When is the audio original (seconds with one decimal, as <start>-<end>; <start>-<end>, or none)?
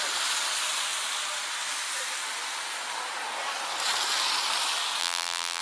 0.0-5.0